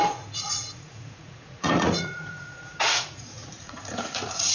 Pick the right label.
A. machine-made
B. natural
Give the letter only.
A